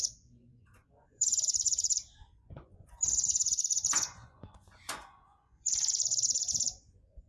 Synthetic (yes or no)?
yes